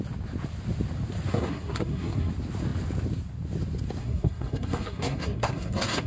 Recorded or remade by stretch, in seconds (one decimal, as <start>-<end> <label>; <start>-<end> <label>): 0.0-1.3 recorded; 1.3-2.3 remade; 2.3-4.0 recorded; 4.0-6.1 remade